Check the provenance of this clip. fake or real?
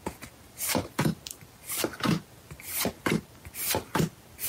real